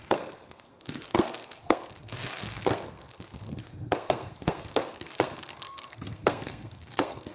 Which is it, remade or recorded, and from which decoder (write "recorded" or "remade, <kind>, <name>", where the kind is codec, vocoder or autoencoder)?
remade, codec, SNAC